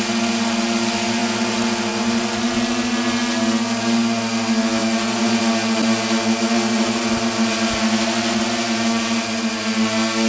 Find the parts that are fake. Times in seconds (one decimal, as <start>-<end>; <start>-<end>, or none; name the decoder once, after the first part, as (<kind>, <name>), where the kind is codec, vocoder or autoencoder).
none